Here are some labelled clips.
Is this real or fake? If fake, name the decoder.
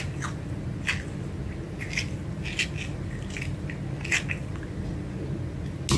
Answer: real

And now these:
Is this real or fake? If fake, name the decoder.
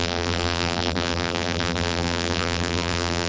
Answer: fake, vocoder, BigVGAN v2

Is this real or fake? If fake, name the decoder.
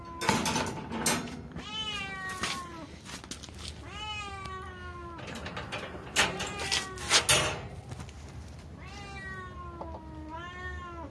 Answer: real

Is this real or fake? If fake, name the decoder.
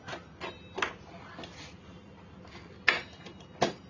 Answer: real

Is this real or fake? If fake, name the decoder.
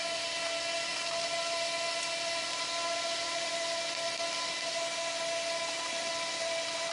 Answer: real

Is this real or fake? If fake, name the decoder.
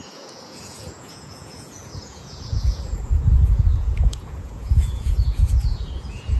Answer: fake, vocoder, Vocos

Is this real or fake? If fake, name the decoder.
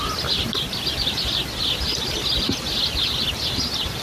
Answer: real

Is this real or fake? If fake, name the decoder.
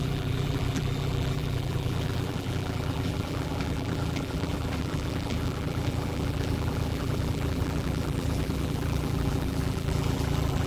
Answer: fake, vocoder, BigVGAN v2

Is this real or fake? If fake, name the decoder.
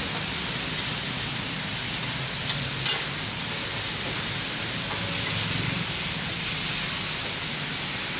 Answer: real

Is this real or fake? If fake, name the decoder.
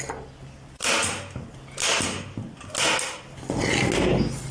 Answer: real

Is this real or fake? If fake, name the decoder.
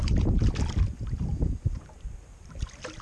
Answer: real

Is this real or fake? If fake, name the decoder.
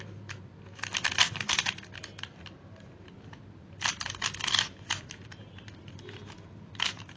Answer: real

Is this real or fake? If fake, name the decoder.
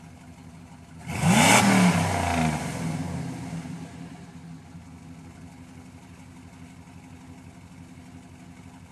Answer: real